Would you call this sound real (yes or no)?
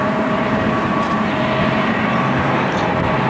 no